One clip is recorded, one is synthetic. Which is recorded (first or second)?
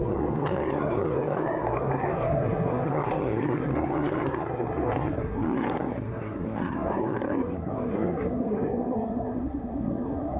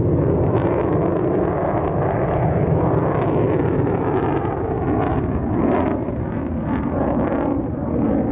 second